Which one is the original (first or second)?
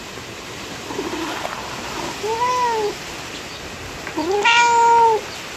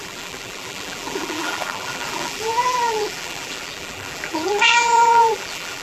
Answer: first